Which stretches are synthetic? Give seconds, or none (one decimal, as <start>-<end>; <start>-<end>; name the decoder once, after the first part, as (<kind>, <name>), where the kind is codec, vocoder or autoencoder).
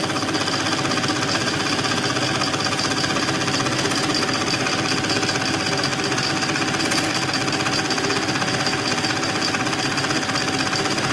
none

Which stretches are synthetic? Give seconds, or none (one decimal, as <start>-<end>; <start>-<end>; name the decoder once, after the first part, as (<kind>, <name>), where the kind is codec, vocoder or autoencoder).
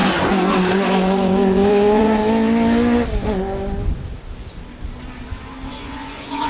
0.0-2.2 (vocoder, Vocos); 5.7-6.5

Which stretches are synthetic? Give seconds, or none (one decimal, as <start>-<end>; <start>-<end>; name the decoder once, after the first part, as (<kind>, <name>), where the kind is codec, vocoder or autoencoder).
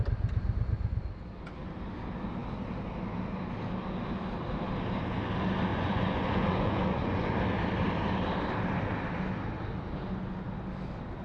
5.7-7.4 (vocoder, Vocos)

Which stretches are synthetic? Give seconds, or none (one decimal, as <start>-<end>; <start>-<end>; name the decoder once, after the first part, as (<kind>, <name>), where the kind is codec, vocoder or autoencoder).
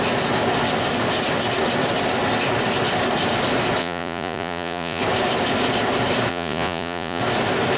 3.8-5.0 (vocoder, Vocos); 6.3-7.2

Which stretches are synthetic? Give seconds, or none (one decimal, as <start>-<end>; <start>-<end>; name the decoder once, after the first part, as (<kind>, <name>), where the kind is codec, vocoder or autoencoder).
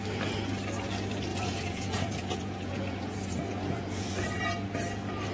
1.3-4.4 (vocoder, Vocos)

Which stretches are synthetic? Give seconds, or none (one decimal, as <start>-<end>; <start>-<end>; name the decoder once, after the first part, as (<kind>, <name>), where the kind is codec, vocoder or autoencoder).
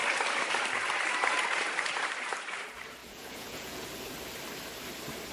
3.0-3.9 (vocoder, Vocos)